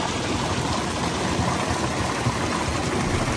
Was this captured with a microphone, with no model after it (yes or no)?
yes